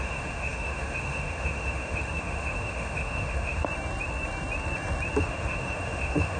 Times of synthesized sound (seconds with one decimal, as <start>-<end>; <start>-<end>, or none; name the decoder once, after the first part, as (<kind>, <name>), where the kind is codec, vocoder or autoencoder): 0.0-3.6 (autoencoder, DAC-VAE); 5.2-6.4